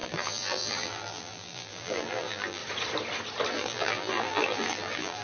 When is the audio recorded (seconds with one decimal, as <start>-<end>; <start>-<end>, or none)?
2.6-3.5